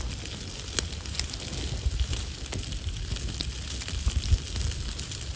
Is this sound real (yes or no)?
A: yes